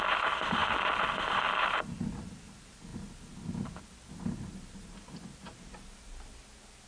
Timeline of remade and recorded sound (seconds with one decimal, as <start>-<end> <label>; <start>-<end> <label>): 0.0-6.9 recorded